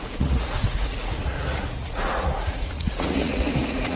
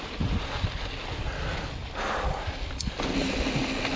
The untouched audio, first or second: second